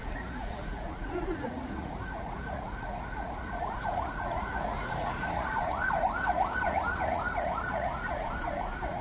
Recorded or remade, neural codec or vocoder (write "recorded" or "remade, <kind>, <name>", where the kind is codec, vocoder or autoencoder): remade, vocoder, Vocos